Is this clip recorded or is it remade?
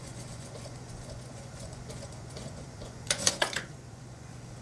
remade